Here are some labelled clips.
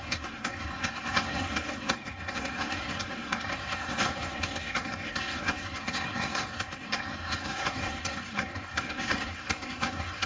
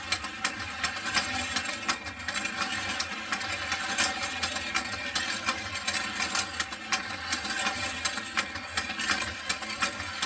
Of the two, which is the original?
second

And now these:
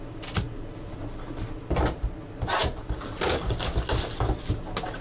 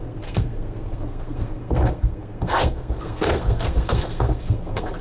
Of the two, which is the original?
first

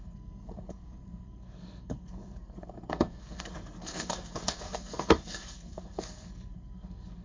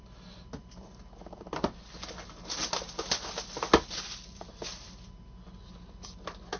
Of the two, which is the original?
second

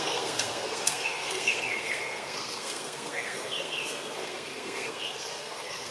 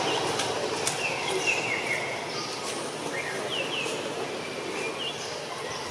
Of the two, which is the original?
second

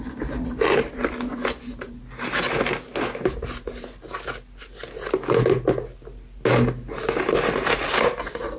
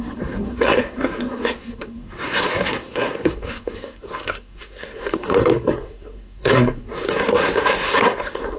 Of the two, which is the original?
first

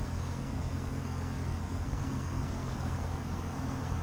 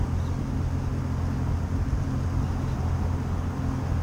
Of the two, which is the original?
second